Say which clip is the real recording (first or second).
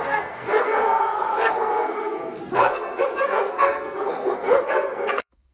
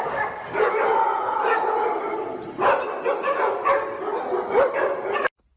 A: second